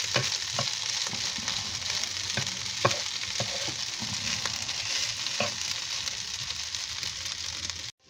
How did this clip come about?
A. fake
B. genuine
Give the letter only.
B